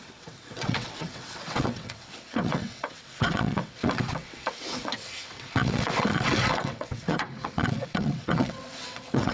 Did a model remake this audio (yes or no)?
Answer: yes